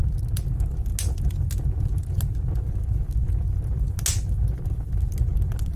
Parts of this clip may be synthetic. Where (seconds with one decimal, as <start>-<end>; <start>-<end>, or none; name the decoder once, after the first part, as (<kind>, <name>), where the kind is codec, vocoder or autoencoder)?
none